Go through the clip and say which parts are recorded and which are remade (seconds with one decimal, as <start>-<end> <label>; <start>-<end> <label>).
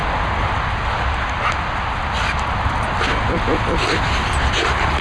0.0-5.0 recorded